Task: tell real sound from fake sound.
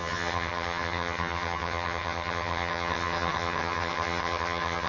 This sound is fake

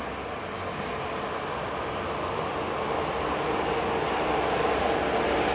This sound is real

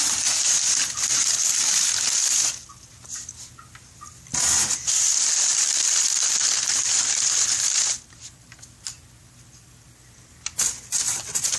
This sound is real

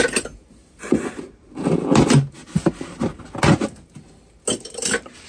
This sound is real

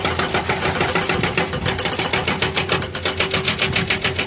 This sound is real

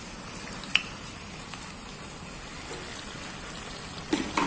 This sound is real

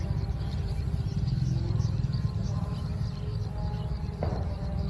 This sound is real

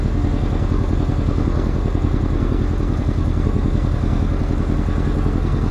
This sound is fake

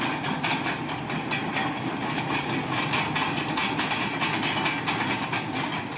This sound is real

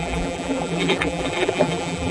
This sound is fake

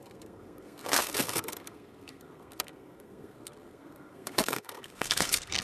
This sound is fake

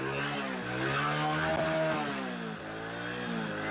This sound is real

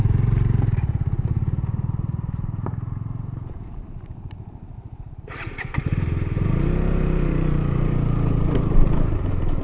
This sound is fake